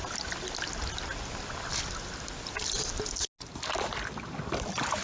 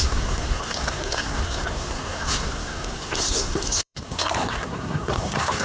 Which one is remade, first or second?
second